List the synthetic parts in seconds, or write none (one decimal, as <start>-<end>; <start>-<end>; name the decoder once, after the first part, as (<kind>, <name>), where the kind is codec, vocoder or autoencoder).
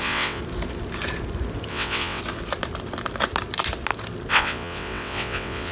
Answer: 0.0-0.4 (vocoder, WaveNeXt); 1.7-2.2; 4.3-5.7